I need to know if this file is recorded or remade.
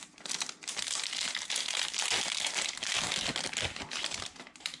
recorded